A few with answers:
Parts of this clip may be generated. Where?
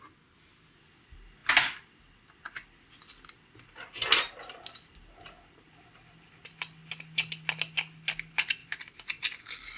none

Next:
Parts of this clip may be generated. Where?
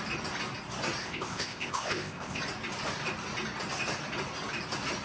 1.0-2.4 (codec, ZipCodec)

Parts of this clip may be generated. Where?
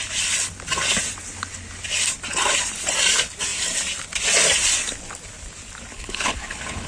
5.9-6.9 (codec, HILCodec)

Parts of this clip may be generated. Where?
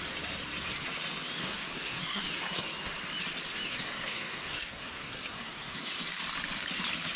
1.4-2.2 (codec, SNAC); 3.7-5.8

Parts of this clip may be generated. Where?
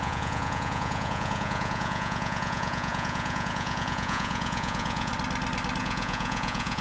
0.0-5.1 (vocoder, Vocos); 5.8-6.8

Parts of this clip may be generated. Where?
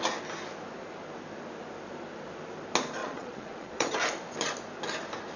3.0-3.9 (vocoder, Vocos)